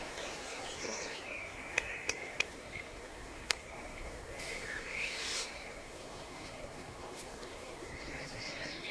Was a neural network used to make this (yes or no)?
yes